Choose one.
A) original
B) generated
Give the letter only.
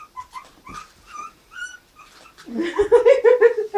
A